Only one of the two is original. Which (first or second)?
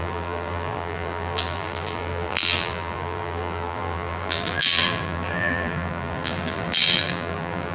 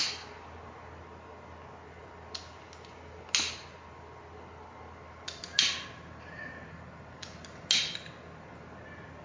second